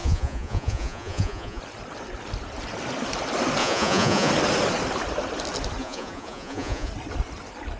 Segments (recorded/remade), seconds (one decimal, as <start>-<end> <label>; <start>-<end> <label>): 0.0-1.6 remade; 1.6-3.6 recorded; 3.6-4.3 remade; 4.3-5.8 recorded; 5.8-6.9 remade; 6.9-7.8 recorded